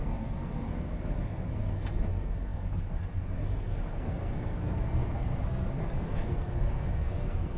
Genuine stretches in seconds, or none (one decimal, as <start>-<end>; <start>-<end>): none